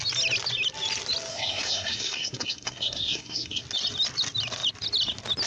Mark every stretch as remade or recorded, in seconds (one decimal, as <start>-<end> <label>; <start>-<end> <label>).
0.0-1.3 recorded; 1.3-3.6 remade; 3.6-5.5 recorded